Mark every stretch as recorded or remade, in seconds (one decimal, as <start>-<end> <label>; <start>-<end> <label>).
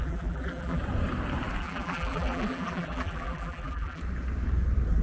0.0-0.8 remade; 0.8-1.6 recorded; 1.6-4.0 remade; 4.0-5.0 recorded